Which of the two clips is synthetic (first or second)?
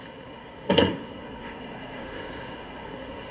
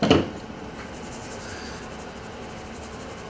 first